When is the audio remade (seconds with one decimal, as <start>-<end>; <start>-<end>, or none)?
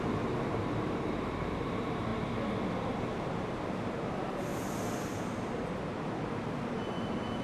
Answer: 0.0-2.1; 2.6-4.5; 6.7-7.4